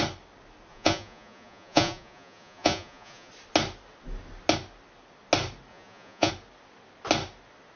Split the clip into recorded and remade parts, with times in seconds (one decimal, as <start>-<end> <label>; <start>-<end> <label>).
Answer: 0.0-0.7 recorded; 0.7-3.3 remade; 3.3-5.7 recorded; 5.7-6.3 remade; 6.3-7.8 recorded